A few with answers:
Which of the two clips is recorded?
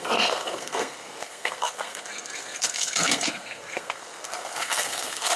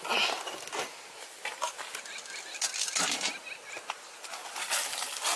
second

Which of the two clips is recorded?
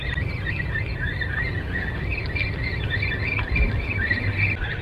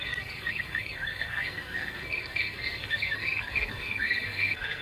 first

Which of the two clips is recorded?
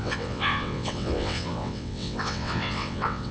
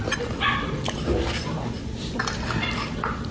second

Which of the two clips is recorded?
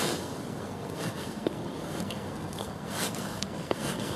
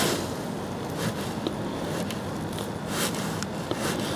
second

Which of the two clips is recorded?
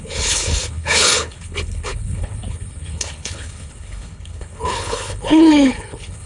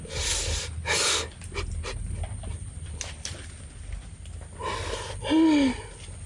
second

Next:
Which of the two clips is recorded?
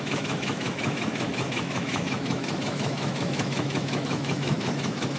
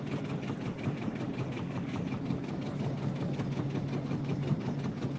second